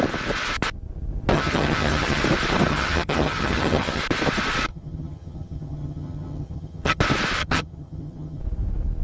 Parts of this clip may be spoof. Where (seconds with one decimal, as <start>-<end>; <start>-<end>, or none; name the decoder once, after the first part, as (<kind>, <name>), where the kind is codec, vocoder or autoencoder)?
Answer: 1.3-2.2 (vocoder, HiFi-GAN); 2.7-4.0; 4.7-7.0; 7.4-8.4